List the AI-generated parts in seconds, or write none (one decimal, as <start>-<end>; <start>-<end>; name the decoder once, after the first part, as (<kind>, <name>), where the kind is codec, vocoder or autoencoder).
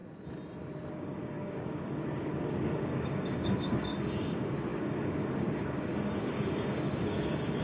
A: 0.9-7.6 (codec, DAC)